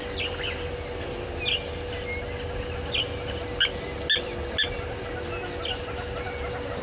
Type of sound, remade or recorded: recorded